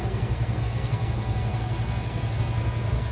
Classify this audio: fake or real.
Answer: fake